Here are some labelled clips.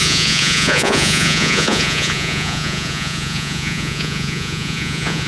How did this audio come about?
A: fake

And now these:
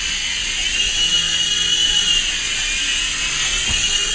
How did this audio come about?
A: real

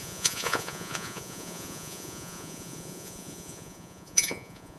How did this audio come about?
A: fake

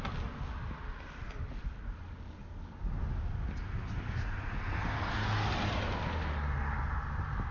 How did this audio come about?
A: real